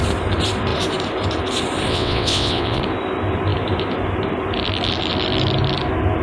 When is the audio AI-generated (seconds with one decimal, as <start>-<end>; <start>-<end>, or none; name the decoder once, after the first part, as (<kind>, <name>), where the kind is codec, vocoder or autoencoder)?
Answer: 1.9-2.8 (vocoder, WaveNeXt)